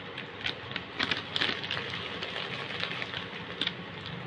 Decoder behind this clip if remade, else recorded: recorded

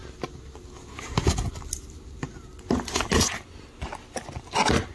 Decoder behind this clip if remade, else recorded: recorded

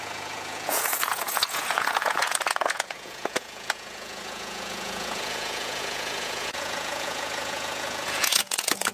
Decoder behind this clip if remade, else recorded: remade, vocoder, Vocos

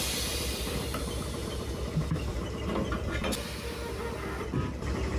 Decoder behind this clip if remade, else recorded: recorded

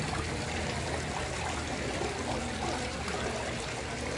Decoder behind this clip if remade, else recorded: recorded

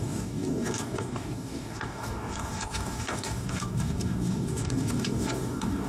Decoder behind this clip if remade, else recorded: remade, codec, DAC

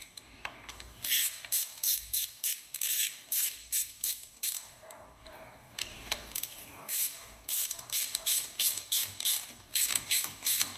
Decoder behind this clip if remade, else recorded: remade, codec, DAC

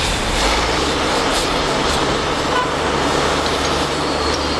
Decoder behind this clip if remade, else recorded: remade, vocoder, BigVGAN v2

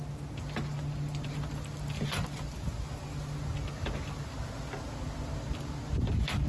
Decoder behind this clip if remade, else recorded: recorded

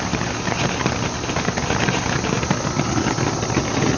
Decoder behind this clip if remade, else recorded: recorded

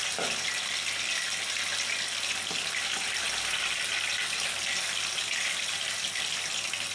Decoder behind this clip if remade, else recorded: recorded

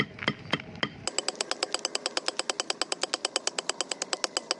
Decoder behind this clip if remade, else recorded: recorded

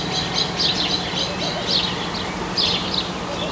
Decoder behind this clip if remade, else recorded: recorded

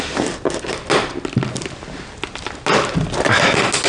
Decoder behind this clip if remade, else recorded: recorded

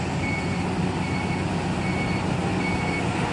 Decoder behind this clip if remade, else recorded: recorded